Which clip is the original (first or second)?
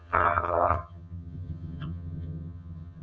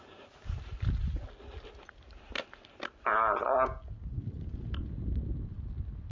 second